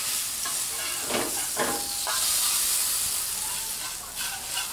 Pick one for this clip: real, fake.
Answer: real